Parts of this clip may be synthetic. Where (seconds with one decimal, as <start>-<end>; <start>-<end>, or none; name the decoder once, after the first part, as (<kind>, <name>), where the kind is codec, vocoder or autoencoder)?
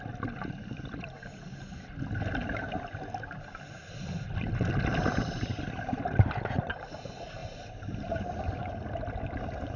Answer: none